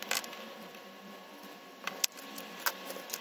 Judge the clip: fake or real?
real